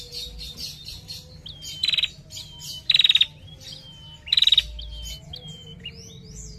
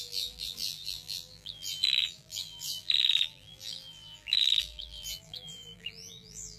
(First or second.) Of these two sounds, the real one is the first